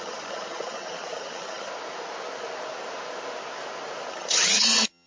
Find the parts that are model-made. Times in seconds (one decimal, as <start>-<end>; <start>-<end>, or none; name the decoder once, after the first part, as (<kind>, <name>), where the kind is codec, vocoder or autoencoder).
0.0-1.7 (vocoder, HiFi-GAN); 4.1-5.1